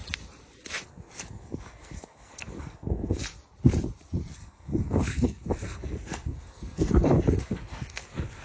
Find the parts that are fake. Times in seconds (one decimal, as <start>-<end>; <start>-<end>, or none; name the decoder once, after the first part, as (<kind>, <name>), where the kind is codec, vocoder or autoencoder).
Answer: 0.8-3.2 (codec, SNAC); 4.3-8.4